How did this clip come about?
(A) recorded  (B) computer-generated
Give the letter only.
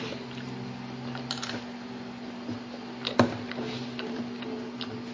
A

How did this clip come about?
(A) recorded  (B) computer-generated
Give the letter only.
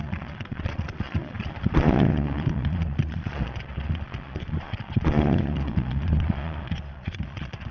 B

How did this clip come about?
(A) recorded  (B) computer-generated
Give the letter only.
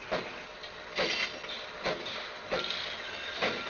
A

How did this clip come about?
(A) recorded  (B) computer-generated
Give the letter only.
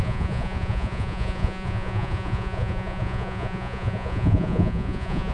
B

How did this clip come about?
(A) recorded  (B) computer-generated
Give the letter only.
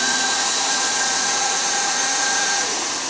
B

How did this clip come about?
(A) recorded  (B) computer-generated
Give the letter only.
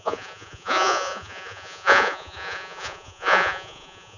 B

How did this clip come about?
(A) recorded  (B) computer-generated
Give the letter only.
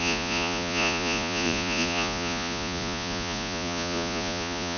B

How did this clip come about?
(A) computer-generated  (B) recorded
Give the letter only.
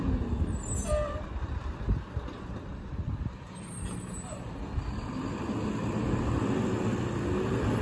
B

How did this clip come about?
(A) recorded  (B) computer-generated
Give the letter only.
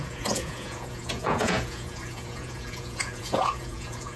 B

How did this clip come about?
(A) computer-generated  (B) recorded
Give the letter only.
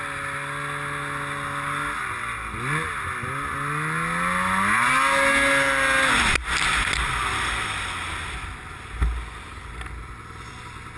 B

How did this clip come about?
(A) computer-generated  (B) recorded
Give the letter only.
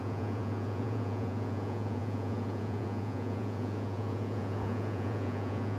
A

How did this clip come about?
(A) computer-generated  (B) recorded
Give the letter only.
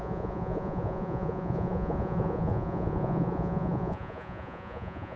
A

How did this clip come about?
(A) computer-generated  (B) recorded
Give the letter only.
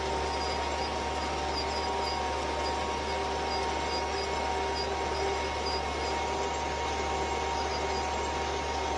B